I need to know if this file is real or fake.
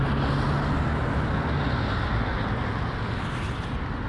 real